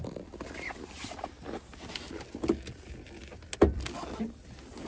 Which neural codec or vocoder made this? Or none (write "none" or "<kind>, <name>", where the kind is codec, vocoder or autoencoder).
none